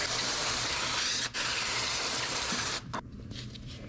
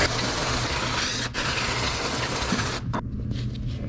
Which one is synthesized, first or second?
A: first